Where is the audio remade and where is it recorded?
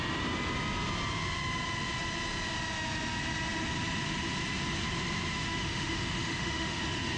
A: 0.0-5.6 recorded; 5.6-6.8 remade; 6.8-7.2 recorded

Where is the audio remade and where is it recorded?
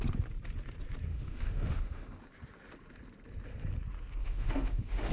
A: 0.0-1.1 recorded; 1.1-2.2 remade; 2.2-4.2 recorded; 4.2-5.1 remade